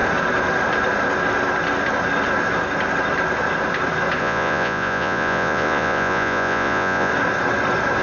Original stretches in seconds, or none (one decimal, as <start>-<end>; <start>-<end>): 0.0-4.2; 7.1-8.0